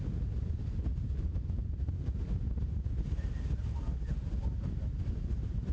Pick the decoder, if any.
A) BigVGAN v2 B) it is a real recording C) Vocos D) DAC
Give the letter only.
B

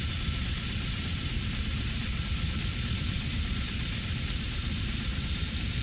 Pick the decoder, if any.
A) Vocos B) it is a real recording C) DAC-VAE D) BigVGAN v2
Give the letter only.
D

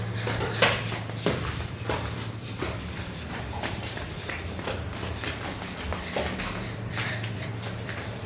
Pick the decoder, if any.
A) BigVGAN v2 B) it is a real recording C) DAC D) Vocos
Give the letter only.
A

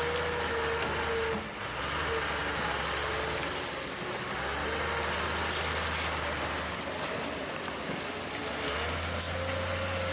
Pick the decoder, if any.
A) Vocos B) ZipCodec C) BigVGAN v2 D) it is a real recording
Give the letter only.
D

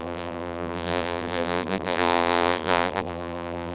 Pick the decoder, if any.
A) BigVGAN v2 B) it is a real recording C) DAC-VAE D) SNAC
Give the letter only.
A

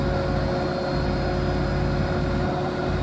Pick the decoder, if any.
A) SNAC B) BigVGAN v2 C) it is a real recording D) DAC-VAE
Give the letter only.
C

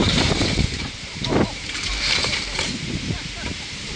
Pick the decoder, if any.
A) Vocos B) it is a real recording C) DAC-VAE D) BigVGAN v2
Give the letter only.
D